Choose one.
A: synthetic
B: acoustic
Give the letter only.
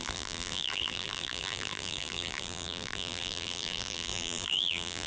A